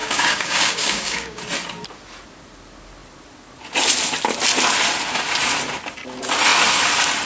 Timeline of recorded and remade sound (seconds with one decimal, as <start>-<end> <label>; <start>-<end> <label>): 0.0-1.4 remade; 1.4-7.3 recorded